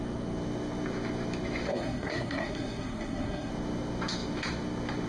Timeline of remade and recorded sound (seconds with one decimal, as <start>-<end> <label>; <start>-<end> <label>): 0.0-1.7 recorded; 1.7-3.5 remade; 3.5-5.1 recorded